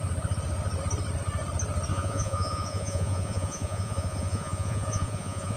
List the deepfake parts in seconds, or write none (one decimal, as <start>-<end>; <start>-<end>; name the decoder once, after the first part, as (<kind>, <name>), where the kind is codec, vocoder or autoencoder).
1.9-5.6 (vocoder, Vocos)